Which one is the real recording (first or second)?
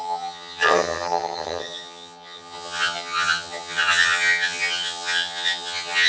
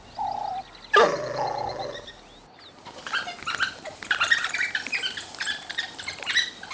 second